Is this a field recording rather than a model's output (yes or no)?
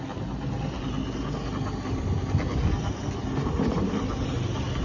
yes